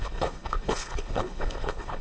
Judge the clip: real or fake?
fake